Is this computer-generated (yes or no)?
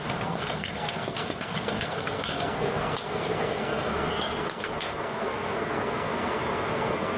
yes